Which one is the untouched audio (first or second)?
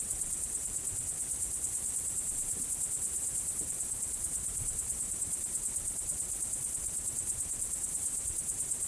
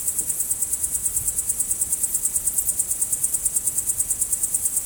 second